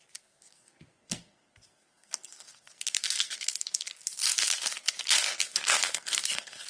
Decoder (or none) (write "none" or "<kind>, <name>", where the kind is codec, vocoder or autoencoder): codec, SNAC